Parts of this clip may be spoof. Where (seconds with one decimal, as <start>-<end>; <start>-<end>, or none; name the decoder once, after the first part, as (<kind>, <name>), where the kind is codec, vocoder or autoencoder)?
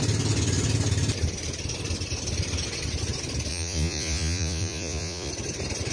3.5-5.3 (vocoder, Vocos)